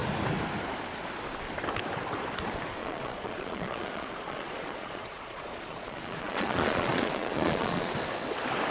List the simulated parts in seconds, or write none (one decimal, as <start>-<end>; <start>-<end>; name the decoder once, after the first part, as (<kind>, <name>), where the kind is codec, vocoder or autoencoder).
2.8-7.9 (vocoder, Vocos)